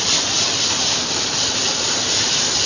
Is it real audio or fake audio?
fake